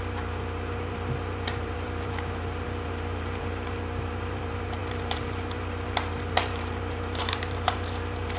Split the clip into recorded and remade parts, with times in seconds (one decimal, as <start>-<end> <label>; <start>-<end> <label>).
0.0-8.4 remade

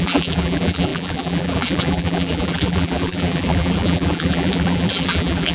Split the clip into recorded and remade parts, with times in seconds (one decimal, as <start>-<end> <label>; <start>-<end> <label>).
0.0-5.5 remade

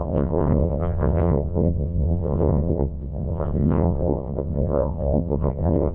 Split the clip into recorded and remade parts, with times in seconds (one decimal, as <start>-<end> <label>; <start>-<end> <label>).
0.0-5.9 remade

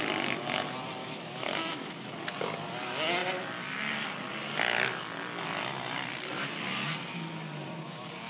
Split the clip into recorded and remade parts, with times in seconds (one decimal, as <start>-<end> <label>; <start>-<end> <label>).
0.0-1.0 recorded; 1.0-2.1 remade; 2.1-8.3 recorded

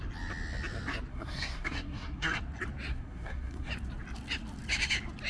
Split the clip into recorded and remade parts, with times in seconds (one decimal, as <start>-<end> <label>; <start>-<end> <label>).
0.0-1.1 recorded; 1.1-2.4 remade; 2.4-2.9 recorded; 2.9-3.7 remade; 3.7-5.3 recorded

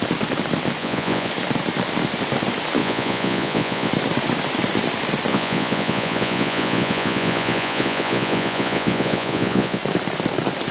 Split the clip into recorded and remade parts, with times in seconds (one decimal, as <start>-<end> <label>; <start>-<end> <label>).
0.0-0.8 recorded; 0.8-1.3 remade; 1.3-2.8 recorded; 2.8-3.9 remade; 3.9-5.3 recorded; 5.3-9.8 remade; 9.8-10.7 recorded

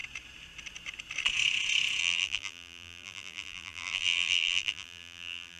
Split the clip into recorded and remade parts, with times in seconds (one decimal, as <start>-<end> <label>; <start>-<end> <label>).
0.0-2.0 recorded; 2.0-5.6 remade